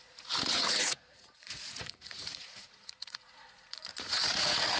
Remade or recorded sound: remade